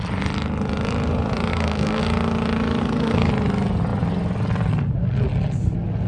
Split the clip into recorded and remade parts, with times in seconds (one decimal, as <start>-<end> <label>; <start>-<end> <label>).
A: 0.0-1.5 recorded; 1.5-2.0 remade; 2.0-2.8 recorded; 2.8-3.3 remade; 3.3-6.1 recorded